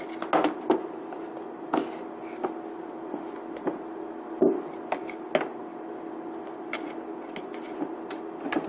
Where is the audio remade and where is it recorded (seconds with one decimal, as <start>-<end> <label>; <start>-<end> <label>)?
0.0-8.7 recorded